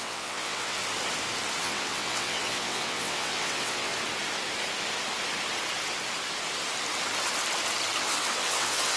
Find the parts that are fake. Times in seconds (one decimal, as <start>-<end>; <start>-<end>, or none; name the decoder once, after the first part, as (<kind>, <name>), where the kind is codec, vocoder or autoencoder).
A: 0.0-0.8 (vocoder, WaveNeXt); 1.6-3.9; 8.0-9.0